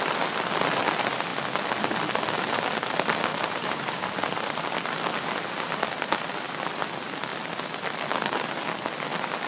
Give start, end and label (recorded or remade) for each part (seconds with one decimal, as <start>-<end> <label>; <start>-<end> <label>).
0.0-3.3 recorded; 3.3-4.0 remade; 4.0-9.5 recorded